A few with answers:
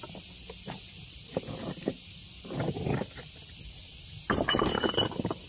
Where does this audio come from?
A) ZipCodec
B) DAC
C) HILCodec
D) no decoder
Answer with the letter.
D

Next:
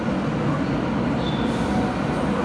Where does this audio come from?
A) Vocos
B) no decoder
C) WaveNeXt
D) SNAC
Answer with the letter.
B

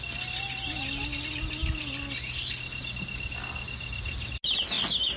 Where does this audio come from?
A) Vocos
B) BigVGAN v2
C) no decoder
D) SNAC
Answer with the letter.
C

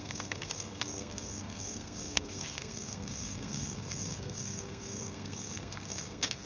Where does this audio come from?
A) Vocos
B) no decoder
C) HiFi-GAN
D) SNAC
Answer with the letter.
D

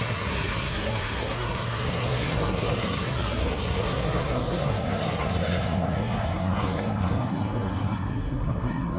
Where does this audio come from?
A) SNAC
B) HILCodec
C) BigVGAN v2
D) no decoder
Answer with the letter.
A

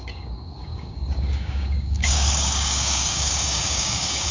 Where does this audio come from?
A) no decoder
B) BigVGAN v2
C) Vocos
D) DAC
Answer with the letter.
D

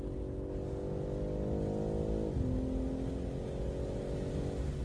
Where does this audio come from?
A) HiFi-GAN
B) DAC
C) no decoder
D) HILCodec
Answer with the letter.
C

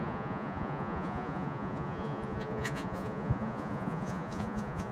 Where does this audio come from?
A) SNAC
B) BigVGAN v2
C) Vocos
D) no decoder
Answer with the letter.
C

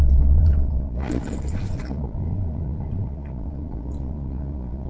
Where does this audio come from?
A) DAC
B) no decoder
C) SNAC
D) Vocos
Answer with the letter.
D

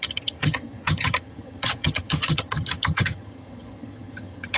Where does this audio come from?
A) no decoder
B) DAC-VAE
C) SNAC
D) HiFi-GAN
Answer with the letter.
D